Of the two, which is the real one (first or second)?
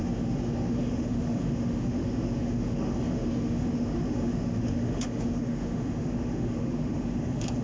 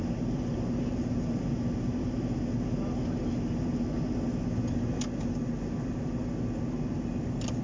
second